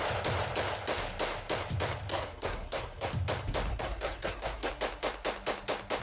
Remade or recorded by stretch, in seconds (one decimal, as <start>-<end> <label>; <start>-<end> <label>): 0.0-2.1 recorded; 2.1-3.1 remade; 3.1-3.7 recorded; 3.7-4.7 remade; 4.7-6.0 recorded